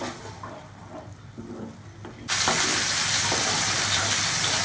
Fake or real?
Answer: real